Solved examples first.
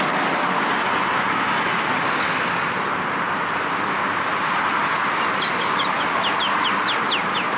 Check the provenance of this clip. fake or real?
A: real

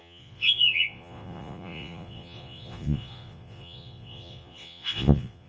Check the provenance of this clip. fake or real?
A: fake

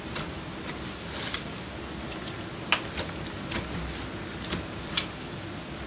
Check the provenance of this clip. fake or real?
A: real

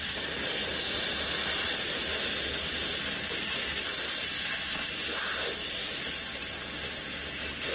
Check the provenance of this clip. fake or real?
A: real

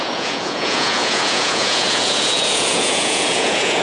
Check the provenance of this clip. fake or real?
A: fake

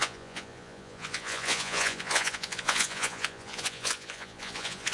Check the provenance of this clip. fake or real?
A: fake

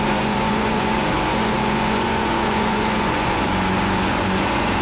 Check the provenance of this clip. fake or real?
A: fake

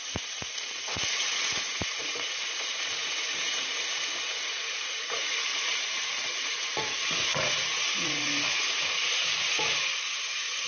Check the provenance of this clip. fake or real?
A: fake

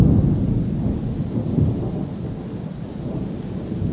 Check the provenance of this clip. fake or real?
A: real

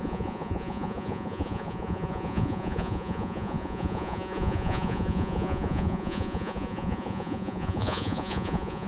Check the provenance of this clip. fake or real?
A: fake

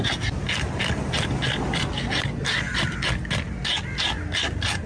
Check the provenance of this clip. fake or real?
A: real